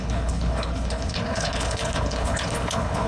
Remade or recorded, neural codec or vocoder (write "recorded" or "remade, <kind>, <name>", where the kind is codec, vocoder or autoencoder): remade, codec, HILCodec